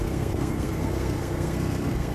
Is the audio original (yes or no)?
no